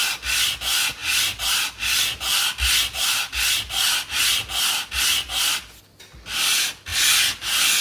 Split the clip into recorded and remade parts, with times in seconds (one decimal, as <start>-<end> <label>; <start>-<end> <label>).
0.0-7.8 recorded

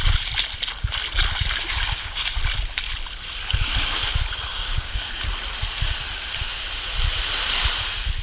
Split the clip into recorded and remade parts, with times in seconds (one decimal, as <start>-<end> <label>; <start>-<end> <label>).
0.0-1.7 recorded; 1.7-2.4 remade; 2.4-4.5 recorded; 4.5-5.1 remade; 5.1-8.2 recorded

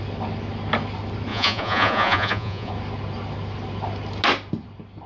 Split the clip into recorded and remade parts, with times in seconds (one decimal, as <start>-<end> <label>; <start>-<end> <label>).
0.0-1.3 recorded; 1.3-2.7 remade; 2.7-5.1 recorded

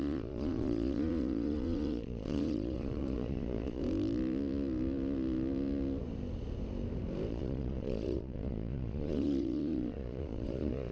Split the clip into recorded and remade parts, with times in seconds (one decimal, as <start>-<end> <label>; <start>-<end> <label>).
0.0-3.8 remade; 3.8-7.3 recorded; 7.3-10.9 remade

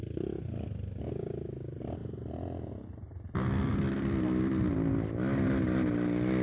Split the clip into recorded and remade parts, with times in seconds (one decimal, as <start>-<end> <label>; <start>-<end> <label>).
0.0-6.4 recorded